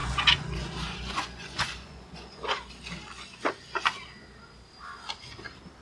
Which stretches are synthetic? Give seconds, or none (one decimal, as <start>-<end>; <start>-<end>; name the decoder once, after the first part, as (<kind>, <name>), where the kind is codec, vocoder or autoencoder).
0.0-2.7 (vocoder, Vocos)

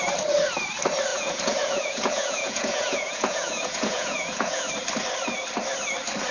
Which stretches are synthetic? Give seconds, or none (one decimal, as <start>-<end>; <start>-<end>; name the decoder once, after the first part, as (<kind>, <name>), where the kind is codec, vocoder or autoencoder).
1.1-4.7 (vocoder, Vocos)

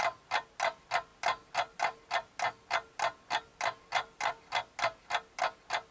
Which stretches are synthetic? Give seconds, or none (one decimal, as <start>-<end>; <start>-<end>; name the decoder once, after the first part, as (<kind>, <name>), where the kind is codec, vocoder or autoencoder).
none

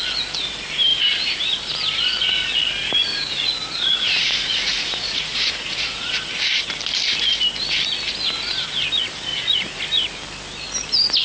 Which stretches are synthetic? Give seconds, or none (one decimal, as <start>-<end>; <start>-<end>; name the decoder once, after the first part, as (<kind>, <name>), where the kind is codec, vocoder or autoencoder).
3.1-6.1 (vocoder, Vocos); 9.3-9.8

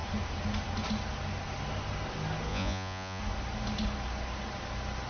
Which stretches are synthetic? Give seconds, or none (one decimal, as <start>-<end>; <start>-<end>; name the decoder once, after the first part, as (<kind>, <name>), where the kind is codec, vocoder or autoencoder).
2.5-3.2 (vocoder, Vocos)

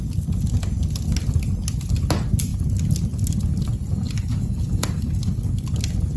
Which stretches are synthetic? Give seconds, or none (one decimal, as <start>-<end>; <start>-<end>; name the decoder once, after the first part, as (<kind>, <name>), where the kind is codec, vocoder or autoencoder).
4.3-5.0 (vocoder, Vocos)

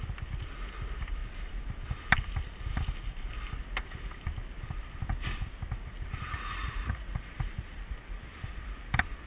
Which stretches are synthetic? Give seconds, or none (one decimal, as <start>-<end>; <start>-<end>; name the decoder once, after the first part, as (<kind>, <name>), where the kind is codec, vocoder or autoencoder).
6.3-7.3 (vocoder, Vocos)

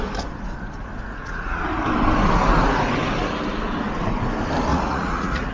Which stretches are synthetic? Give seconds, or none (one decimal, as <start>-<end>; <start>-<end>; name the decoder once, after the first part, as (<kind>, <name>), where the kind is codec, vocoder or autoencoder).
1.0-1.6 (vocoder, Vocos); 4.7-5.5